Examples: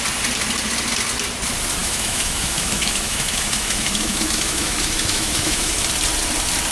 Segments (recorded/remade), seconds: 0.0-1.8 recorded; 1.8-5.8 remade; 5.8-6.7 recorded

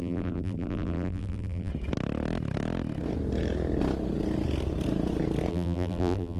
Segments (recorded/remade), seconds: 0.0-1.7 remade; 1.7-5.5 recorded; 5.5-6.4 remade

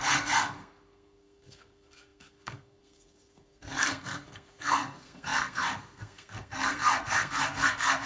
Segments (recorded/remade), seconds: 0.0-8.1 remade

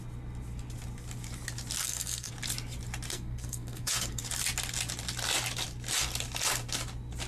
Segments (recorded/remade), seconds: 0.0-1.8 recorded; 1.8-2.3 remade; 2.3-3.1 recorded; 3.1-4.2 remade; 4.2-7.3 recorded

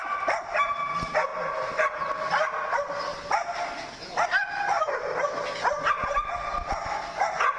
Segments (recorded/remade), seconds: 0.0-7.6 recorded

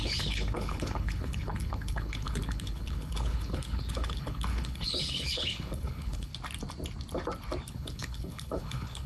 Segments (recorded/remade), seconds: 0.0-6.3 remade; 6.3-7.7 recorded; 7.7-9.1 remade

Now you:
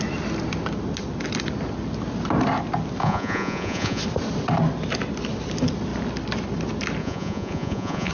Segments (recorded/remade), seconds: 0.0-3.0 recorded; 3.0-4.0 remade; 4.0-7.0 recorded; 7.0-8.1 remade

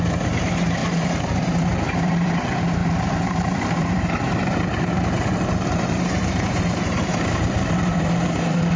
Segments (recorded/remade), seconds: 0.0-2.8 recorded; 2.8-8.0 remade; 8.0-8.8 recorded